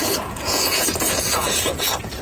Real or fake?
fake